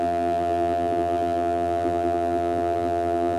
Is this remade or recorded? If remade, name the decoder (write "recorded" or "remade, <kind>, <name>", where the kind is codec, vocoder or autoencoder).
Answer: remade, vocoder, BigVGAN v2